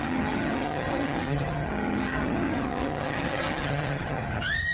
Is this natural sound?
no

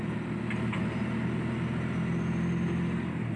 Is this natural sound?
yes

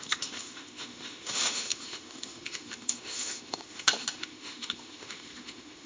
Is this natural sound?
no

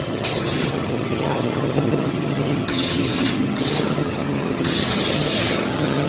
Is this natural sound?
no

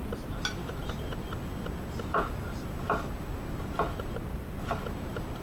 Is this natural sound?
yes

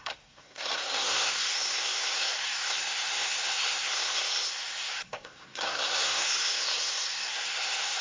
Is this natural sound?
no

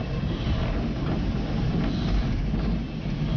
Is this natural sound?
yes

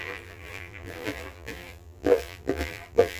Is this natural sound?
no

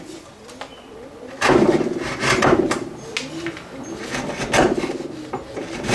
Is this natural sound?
yes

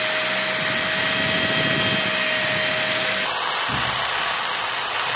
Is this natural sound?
yes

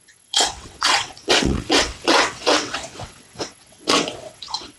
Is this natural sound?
no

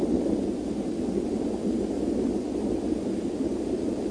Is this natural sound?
yes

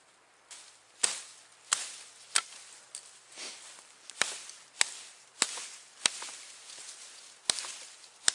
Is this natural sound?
yes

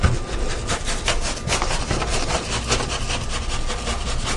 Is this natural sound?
yes